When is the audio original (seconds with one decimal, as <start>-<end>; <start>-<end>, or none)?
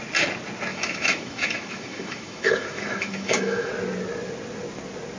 0.0-0.7; 3.7-5.2